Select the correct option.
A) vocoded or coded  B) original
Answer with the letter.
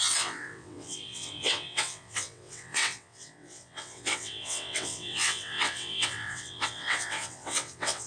A